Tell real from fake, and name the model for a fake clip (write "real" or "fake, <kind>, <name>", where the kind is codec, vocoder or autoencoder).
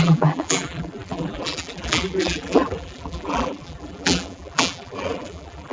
fake, vocoder, BigVGAN v2